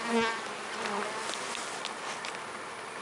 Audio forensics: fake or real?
real